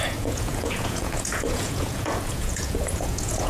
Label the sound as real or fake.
fake